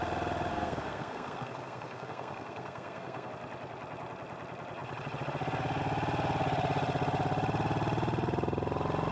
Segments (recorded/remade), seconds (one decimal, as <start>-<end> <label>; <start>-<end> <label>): 0.0-0.5 recorded; 0.5-3.3 remade; 3.3-9.1 recorded